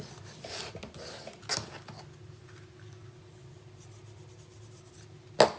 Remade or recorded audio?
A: recorded